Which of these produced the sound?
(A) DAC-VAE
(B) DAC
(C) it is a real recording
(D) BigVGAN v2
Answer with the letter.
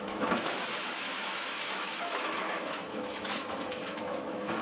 A